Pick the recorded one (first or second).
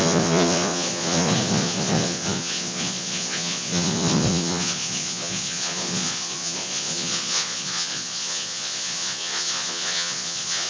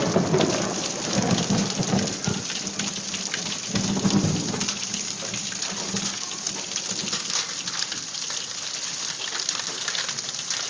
second